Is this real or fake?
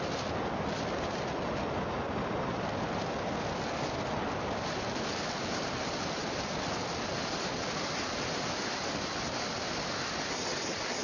real